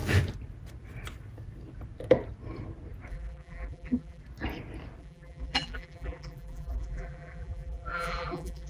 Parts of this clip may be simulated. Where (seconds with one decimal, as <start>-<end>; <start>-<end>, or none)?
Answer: 3.1-4.2; 5.0-8.7